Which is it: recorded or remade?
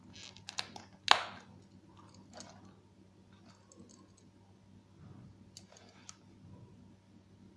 recorded